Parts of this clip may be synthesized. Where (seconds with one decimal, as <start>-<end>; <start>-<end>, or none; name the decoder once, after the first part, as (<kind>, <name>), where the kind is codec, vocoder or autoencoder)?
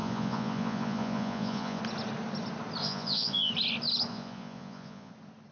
0.0-1.8 (vocoder, Vocos); 2.8-3.5; 4.1-5.1